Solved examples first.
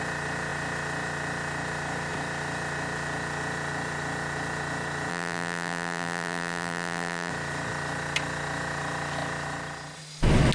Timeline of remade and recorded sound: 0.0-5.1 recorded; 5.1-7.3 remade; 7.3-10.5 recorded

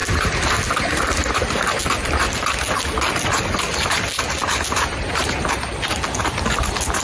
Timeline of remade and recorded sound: 0.0-4.8 recorded; 4.8-5.7 remade; 5.7-7.0 recorded

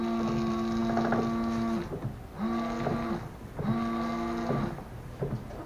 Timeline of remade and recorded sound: 0.0-5.7 recorded

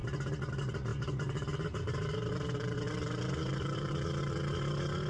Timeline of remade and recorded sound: 0.0-0.9 recorded; 0.9-4.0 remade; 4.0-5.1 recorded

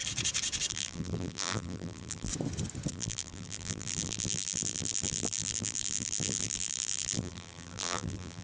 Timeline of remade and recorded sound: 0.0-0.7 recorded; 0.7-2.3 remade; 2.3-2.9 recorded; 2.9-8.4 remade